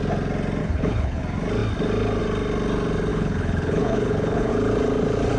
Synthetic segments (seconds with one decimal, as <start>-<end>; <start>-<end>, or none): 0.6-1.2; 3.1-4.5